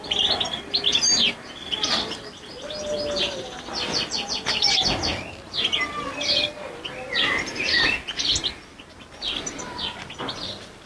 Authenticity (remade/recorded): recorded